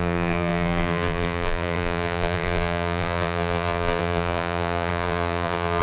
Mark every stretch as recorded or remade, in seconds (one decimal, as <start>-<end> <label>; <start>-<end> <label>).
0.0-5.8 remade

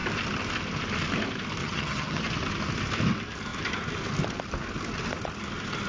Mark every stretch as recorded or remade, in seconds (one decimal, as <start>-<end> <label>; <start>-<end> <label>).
0.0-1.6 recorded; 1.6-2.2 remade; 2.2-5.9 recorded

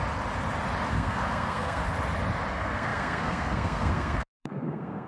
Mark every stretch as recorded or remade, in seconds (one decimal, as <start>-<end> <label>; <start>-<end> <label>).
0.0-0.9 recorded; 0.9-1.8 remade; 1.8-2.5 recorded; 2.5-5.1 remade

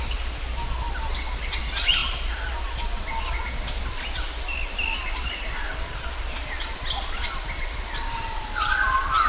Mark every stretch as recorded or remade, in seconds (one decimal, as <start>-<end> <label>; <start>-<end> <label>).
0.0-9.3 recorded

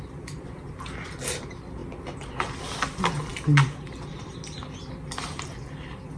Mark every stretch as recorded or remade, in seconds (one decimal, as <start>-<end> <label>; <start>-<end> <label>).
0.0-6.2 recorded

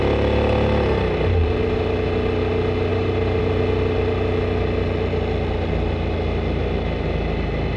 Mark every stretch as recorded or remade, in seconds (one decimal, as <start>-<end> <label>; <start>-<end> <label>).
0.0-2.9 recorded; 2.9-3.4 remade; 3.4-7.8 recorded

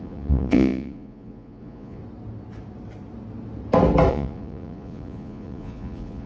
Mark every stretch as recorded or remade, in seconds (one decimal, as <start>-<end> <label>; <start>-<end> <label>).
0.0-2.0 remade; 2.0-4.1 recorded; 4.1-6.3 remade

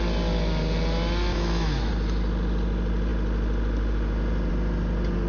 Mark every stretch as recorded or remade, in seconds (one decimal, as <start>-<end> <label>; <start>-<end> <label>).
0.0-1.3 recorded; 1.3-1.9 remade; 1.9-5.3 recorded